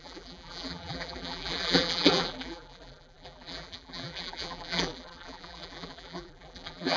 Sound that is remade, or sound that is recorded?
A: remade